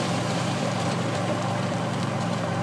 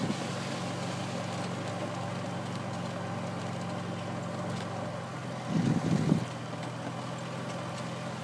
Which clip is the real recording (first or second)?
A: second